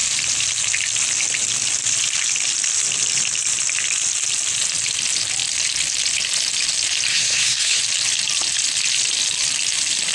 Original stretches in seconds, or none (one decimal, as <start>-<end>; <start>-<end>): 0.0-7.1; 7.8-10.1